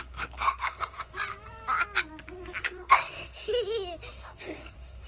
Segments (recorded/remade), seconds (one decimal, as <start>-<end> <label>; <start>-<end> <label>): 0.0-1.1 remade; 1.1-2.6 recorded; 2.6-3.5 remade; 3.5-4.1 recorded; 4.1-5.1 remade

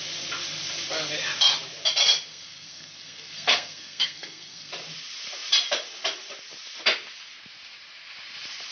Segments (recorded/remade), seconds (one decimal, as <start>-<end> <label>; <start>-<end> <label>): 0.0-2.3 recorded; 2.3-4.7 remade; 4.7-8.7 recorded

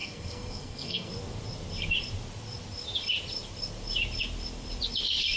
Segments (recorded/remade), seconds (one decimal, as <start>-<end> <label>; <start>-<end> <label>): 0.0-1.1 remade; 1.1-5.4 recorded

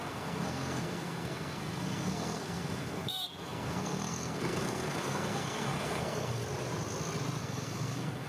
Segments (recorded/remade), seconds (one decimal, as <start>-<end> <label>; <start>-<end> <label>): 0.0-6.4 remade; 6.4-7.4 recorded; 7.4-8.3 remade

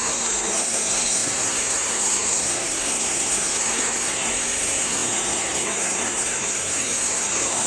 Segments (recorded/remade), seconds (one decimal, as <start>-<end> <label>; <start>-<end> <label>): 0.0-7.7 remade

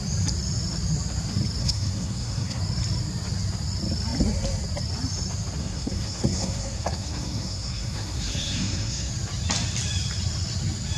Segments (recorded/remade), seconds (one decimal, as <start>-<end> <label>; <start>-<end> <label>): 0.0-1.6 recorded; 1.6-2.6 remade; 2.6-5.6 recorded; 5.6-9.1 remade; 9.1-11.0 recorded

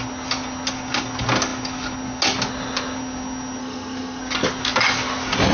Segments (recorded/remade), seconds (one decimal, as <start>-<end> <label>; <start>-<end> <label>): 0.0-3.6 recorded; 3.6-4.2 remade; 4.2-5.5 recorded

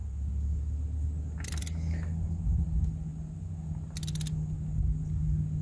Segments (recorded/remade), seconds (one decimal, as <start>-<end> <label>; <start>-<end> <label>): 0.0-5.6 recorded